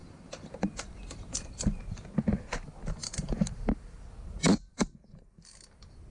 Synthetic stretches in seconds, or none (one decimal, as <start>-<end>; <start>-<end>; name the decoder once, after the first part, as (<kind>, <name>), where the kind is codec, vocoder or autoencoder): 0.0-2.4 (vocoder, BigVGAN v2); 3.0-5.1